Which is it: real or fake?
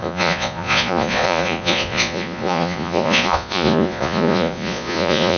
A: fake